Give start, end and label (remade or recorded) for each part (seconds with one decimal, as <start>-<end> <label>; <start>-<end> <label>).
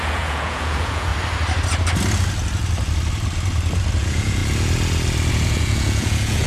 0.0-1.1 remade; 1.1-4.0 recorded; 4.0-4.4 remade; 4.4-5.3 recorded; 5.3-6.5 remade